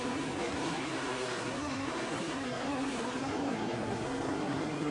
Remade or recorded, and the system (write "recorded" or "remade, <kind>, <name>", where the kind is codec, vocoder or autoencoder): remade, codec, SNAC